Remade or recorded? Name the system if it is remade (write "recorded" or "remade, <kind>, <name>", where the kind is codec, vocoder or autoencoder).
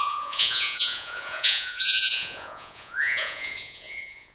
remade, vocoder, Vocos